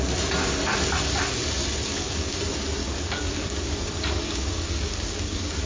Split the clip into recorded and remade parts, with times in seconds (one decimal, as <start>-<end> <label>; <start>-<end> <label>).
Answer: 0.0-1.9 recorded; 1.9-2.4 remade; 2.4-2.8 recorded; 2.8-5.7 remade